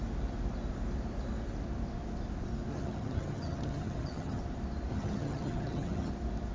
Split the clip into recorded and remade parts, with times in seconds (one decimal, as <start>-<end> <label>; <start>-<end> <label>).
0.0-2.7 recorded; 2.7-4.4 remade; 4.4-4.9 recorded; 4.9-6.1 remade; 6.1-6.5 recorded